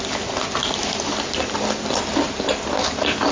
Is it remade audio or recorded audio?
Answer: recorded